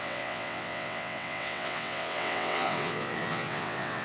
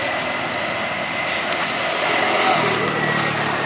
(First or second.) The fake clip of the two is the first